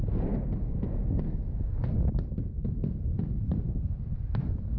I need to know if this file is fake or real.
real